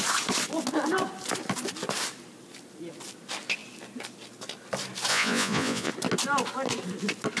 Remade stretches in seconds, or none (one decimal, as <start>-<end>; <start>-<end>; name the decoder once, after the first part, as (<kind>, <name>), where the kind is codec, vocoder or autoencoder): 5.1-5.9 (vocoder, Vocos)